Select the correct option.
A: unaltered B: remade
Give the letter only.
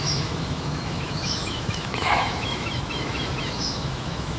B